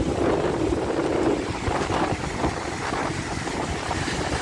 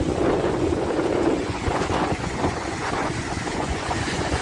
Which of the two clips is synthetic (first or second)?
second